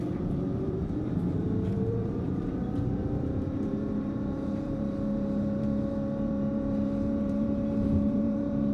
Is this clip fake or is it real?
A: fake